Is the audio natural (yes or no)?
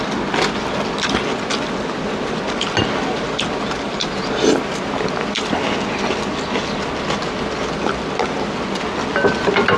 yes